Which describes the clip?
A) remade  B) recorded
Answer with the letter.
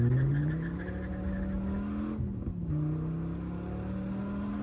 B